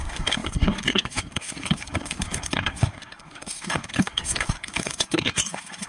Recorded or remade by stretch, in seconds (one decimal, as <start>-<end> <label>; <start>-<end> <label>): 0.0-5.9 remade